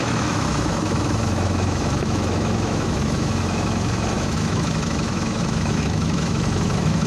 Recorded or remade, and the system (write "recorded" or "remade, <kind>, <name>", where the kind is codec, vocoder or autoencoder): remade, autoencoder, DAC-VAE